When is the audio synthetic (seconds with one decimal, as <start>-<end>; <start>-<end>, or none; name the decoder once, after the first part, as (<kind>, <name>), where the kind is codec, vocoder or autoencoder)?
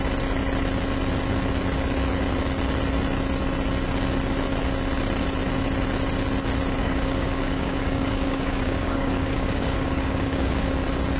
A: 6.8-10.7 (codec, DAC)